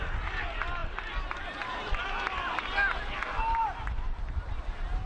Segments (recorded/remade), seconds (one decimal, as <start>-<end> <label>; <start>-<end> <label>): 0.0-0.8 recorded; 0.8-1.6 remade; 1.6-5.1 recorded